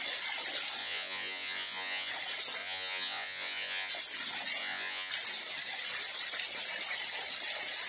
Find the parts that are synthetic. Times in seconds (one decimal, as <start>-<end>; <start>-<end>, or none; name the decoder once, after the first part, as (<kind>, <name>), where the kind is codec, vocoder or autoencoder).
0.8-2.1 (vocoder, Vocos); 2.6-3.9; 4.6-5.1